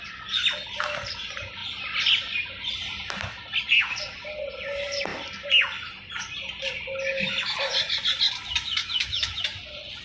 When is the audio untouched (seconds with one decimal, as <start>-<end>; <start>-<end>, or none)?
0.0-8.8; 9.4-10.0